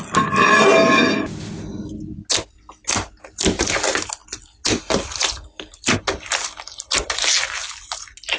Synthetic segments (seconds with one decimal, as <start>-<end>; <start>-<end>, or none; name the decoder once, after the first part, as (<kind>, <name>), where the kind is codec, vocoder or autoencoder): none